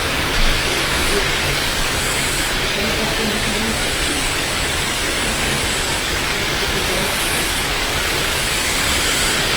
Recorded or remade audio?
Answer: remade